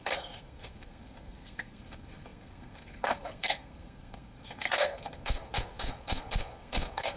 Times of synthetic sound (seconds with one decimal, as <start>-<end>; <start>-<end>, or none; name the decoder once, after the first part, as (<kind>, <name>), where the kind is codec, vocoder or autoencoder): 0.0-7.2 (codec, SNAC)